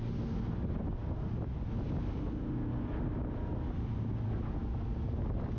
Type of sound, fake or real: real